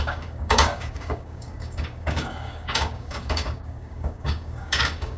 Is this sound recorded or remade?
remade